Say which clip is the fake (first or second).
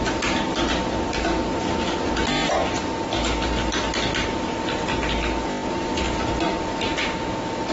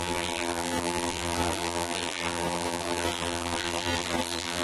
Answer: second